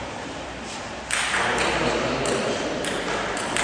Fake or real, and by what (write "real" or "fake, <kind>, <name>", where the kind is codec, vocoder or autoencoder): fake, vocoder, BigVGAN v2